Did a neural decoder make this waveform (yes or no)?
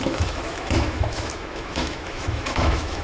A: yes